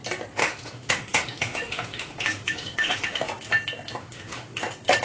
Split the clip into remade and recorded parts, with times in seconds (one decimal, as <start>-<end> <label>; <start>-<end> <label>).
0.0-0.4 recorded; 0.4-3.3 remade; 3.3-4.0 recorded; 4.0-4.6 remade; 4.6-5.0 recorded